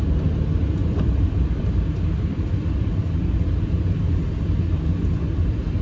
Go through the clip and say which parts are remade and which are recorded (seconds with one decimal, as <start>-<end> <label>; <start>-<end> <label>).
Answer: 0.0-0.8 recorded; 0.8-4.0 remade; 4.0-5.8 recorded